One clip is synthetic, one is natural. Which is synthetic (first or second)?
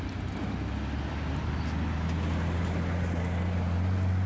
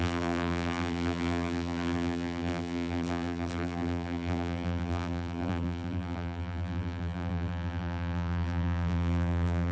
second